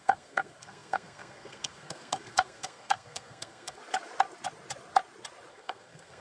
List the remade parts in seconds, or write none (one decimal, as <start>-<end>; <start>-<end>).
0.0-3.8; 5.5-6.2